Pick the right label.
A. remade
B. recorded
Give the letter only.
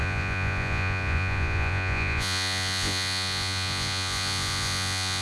A